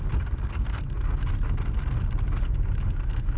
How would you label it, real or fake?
real